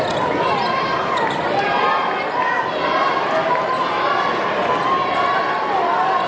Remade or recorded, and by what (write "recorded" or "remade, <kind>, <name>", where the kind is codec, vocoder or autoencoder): recorded